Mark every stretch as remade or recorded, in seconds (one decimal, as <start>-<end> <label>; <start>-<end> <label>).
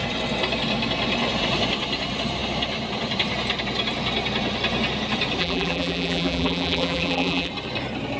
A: 0.0-5.4 recorded; 5.4-7.5 remade; 7.5-8.2 recorded